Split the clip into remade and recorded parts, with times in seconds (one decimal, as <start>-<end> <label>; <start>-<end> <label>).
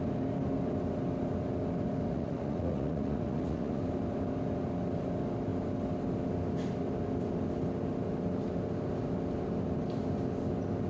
0.0-2.1 recorded; 2.1-3.8 remade; 3.8-10.9 recorded